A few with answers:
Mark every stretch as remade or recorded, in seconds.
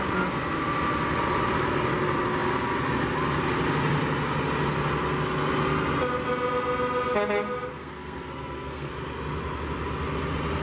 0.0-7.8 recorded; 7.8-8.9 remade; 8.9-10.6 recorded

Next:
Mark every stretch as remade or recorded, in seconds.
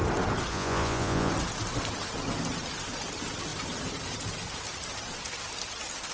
0.0-0.5 recorded; 0.5-1.3 remade; 1.3-6.1 recorded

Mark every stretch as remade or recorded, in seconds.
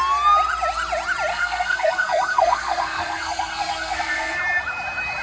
0.0-1.3 recorded; 1.3-4.4 remade; 4.4-5.2 recorded